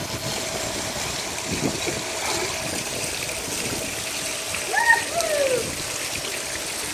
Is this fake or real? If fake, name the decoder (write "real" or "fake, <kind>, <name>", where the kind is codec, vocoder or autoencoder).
real